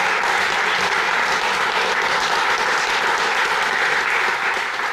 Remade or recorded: recorded